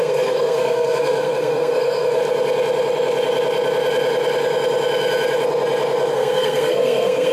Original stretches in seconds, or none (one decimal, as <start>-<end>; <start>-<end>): 2.2-6.1